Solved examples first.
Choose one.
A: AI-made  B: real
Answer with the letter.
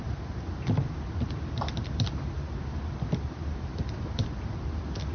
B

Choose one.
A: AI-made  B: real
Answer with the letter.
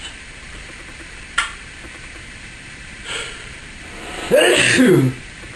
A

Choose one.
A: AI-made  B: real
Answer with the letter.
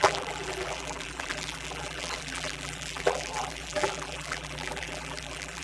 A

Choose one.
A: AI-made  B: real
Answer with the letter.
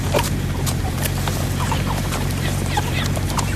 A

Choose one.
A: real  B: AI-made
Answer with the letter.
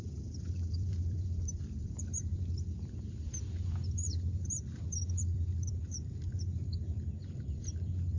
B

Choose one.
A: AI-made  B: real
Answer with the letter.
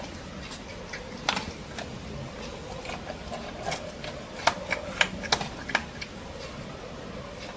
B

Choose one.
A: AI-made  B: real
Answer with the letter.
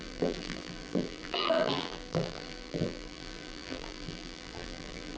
A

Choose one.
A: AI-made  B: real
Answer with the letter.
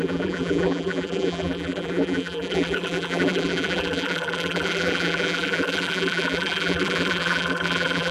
A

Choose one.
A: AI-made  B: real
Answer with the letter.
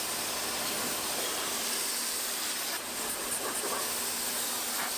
B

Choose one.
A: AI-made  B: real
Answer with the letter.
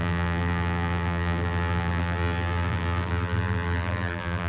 A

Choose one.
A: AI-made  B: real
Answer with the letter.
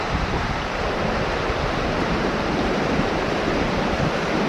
A